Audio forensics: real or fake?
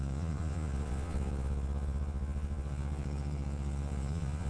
fake